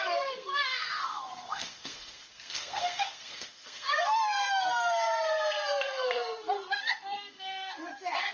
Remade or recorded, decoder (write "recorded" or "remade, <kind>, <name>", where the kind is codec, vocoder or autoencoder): remade, codec, SNAC